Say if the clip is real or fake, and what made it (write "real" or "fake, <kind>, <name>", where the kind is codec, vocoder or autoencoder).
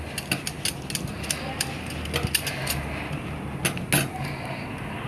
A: real